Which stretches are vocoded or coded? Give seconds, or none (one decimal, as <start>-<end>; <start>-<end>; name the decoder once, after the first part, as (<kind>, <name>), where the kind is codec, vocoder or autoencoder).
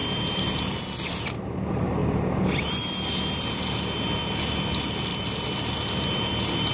none